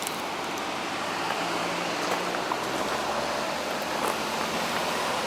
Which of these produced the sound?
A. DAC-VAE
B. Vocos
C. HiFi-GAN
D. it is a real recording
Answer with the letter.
D